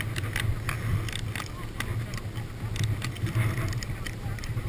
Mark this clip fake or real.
real